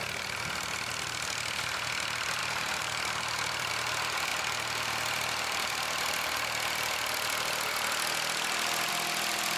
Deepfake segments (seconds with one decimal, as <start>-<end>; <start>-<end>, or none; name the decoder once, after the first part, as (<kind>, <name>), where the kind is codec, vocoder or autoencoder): 2.4-3.7 (vocoder, BigVGAN v2)